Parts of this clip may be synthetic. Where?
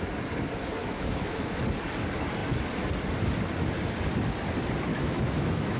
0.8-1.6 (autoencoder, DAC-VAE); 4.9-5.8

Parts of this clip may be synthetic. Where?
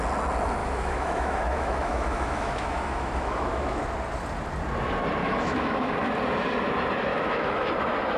0.6-3.8 (autoencoder, DAC-VAE); 5.2-6.1; 7.1-7.7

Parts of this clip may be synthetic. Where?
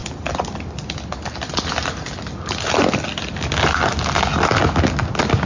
none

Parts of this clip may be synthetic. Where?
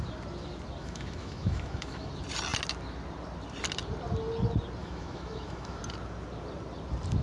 0.8-2.1 (autoencoder, DAC-VAE); 4.8-5.8